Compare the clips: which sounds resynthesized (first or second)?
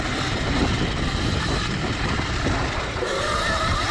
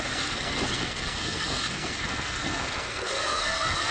second